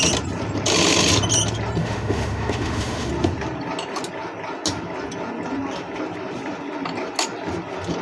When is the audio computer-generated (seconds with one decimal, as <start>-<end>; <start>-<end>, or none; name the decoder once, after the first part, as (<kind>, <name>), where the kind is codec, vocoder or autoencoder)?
1.8-3.1 (autoencoder, DAC-VAE)